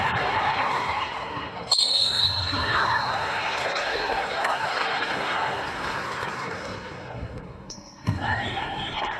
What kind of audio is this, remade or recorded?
remade